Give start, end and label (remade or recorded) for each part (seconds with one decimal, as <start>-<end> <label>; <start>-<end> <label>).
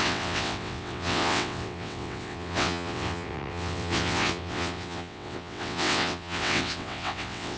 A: 0.0-7.6 remade